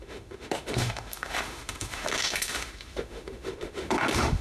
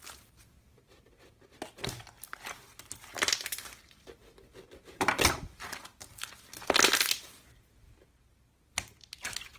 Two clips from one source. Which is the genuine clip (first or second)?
second